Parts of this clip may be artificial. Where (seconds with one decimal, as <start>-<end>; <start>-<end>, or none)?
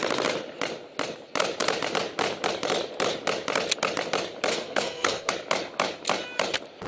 4.5-5.3